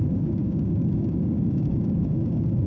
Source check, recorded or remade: remade